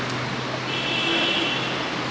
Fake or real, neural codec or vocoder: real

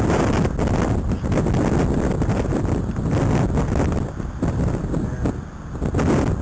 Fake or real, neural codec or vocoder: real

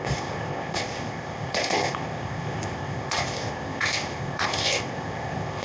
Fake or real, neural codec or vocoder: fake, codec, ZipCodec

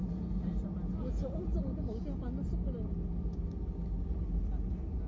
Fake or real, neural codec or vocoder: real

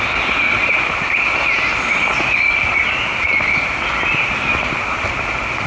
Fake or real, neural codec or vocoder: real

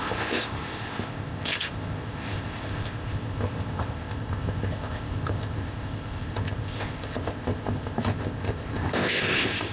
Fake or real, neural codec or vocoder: fake, codec, ZipCodec